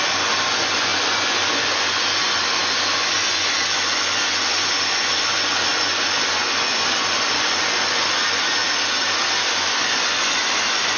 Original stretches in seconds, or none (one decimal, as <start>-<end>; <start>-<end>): 8.6-9.5